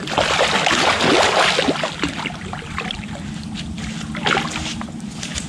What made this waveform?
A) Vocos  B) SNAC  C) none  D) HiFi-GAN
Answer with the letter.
C